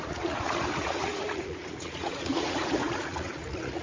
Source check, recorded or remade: remade